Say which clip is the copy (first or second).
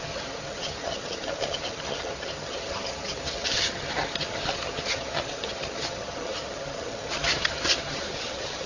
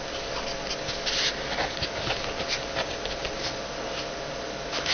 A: first